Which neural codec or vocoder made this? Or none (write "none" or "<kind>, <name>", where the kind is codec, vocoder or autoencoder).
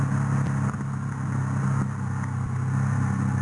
none